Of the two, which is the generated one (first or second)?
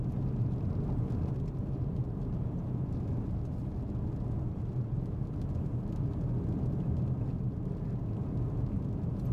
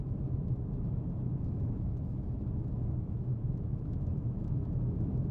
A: second